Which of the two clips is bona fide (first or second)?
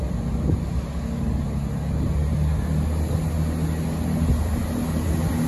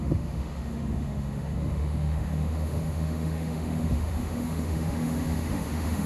first